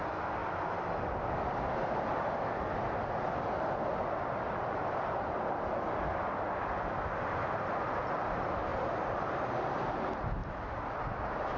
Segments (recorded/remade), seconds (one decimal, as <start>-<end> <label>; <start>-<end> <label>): 0.0-8.7 recorded; 8.7-9.2 remade; 9.2-11.6 recorded